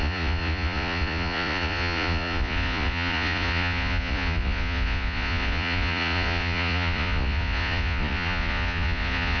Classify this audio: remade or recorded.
remade